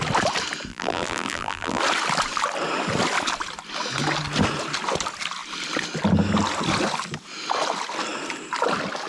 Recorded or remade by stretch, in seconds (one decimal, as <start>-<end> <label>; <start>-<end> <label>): 0.0-0.7 recorded; 0.7-1.8 remade; 1.8-9.1 recorded